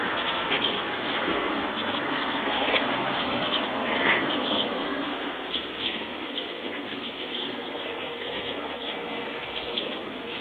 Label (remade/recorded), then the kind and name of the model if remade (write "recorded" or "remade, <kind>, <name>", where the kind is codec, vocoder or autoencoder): remade, codec, SNAC